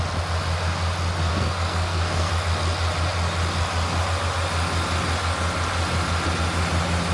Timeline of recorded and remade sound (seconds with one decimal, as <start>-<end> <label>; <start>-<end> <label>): 0.0-1.3 recorded; 1.3-2.3 remade; 2.3-7.1 recorded